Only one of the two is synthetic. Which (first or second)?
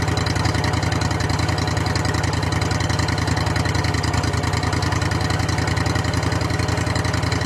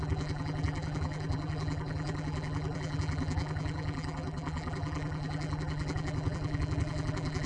second